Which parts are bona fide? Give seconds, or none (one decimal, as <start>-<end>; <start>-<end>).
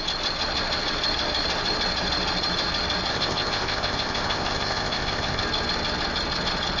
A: 0.0-3.1; 5.4-6.8